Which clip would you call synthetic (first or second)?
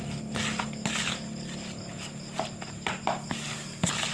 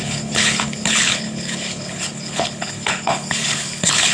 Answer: second